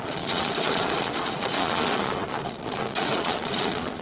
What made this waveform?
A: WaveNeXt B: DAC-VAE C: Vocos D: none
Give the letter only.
C